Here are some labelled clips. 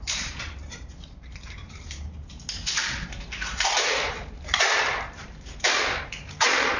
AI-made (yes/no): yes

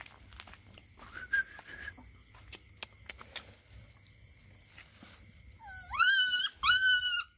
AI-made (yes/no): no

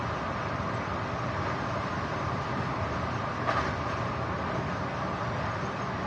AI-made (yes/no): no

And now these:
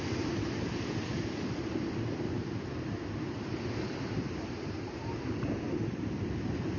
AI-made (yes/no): no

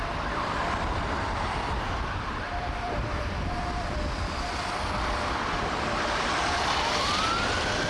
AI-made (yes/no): yes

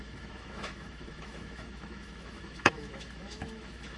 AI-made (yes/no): yes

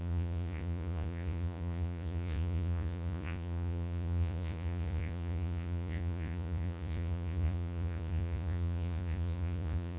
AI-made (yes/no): yes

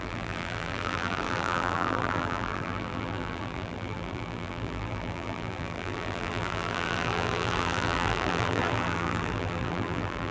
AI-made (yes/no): yes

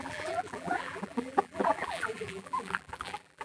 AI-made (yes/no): yes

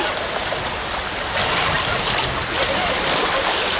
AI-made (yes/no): no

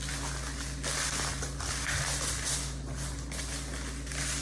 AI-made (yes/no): no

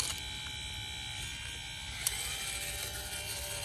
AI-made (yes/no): no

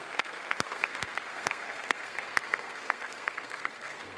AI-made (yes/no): yes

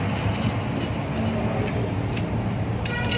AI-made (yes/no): no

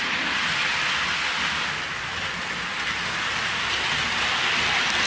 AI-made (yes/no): no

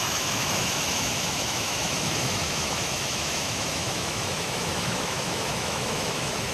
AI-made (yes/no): yes